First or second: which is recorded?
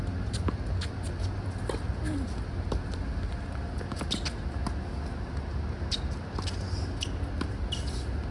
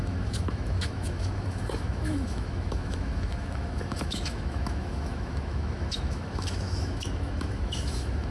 first